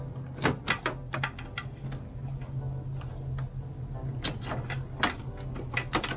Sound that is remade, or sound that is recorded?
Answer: recorded